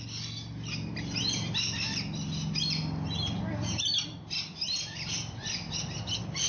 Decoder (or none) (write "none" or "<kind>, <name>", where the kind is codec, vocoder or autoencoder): none